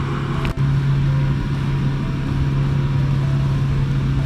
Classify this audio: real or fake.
real